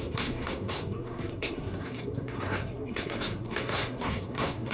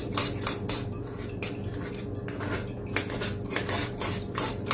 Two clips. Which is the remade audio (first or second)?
first